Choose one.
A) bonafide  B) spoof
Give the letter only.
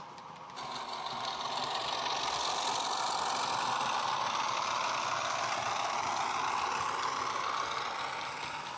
A